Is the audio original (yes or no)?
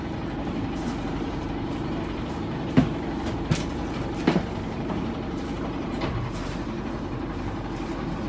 no